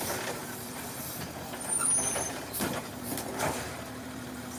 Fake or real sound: fake